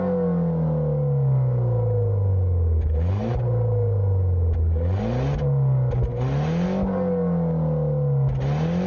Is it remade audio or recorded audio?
recorded